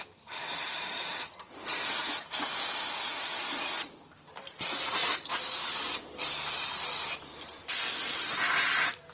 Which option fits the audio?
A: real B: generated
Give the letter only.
A